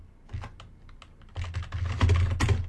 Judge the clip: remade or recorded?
recorded